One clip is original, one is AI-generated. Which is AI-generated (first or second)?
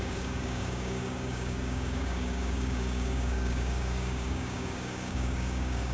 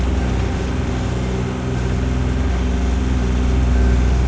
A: first